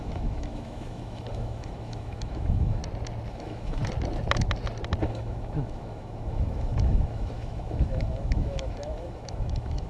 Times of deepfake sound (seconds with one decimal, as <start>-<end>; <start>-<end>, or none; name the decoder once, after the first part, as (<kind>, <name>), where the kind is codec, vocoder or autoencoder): 0.0-2.8 (autoencoder, DAC-VAE); 3.3-3.8; 5.0-9.9